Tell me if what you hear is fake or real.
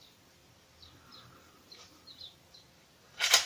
real